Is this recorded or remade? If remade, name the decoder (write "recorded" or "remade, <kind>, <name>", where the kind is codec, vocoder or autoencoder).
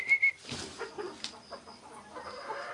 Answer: recorded